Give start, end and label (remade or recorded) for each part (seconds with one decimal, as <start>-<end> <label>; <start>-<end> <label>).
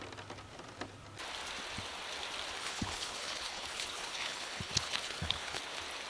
0.0-2.6 recorded; 2.6-5.6 remade; 5.6-6.1 recorded